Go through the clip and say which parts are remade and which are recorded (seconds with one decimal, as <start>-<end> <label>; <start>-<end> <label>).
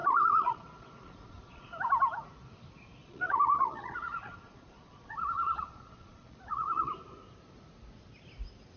0.0-1.7 remade; 1.7-3.0 recorded; 3.0-6.9 remade; 6.9-8.8 recorded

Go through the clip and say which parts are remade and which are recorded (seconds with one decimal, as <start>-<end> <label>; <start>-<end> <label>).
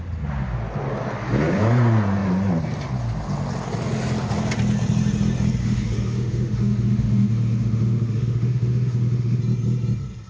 0.0-5.6 recorded; 5.6-9.4 remade; 9.4-10.3 recorded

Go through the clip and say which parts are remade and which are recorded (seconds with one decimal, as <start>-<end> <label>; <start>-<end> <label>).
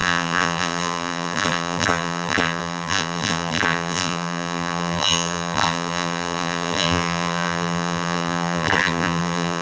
0.0-9.6 remade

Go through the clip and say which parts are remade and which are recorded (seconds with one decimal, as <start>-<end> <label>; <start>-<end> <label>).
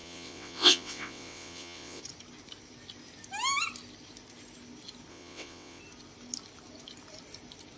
0.0-2.0 remade; 2.0-5.1 recorded; 5.1-5.8 remade; 5.8-7.8 recorded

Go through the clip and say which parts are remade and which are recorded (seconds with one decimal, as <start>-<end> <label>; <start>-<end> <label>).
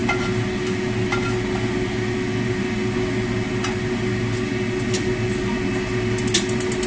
0.0-6.9 recorded